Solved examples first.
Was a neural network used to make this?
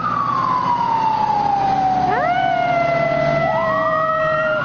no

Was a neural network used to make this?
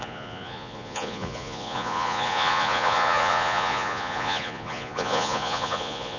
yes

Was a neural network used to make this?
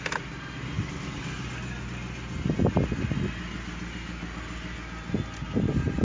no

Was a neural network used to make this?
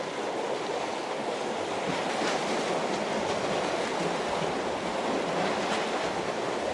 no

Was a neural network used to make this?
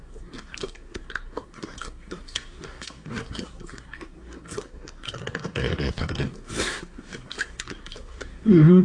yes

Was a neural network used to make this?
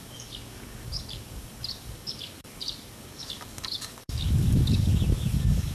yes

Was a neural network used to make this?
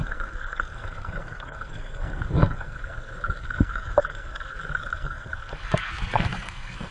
yes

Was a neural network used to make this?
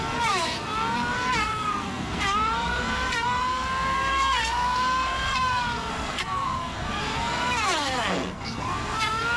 yes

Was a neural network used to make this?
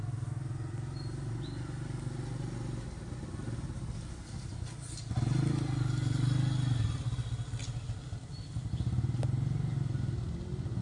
no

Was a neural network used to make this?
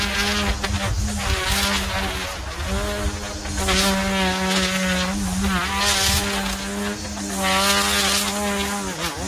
no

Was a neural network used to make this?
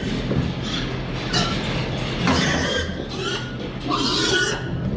no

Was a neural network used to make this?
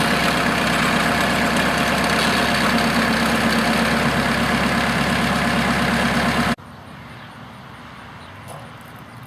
no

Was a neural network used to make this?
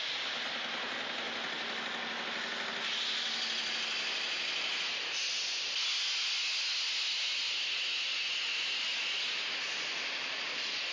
no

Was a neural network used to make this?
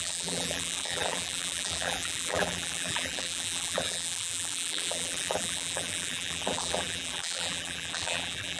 yes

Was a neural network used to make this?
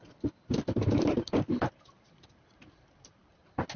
no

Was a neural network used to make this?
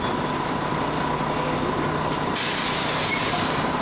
no